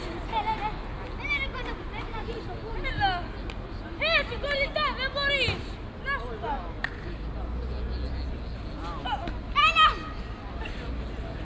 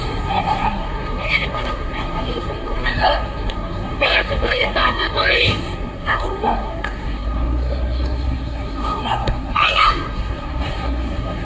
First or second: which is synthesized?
second